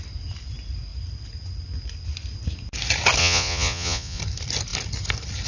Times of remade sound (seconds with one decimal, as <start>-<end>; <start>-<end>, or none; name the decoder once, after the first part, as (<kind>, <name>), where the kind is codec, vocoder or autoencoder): 3.2-4.2 (vocoder, Vocos)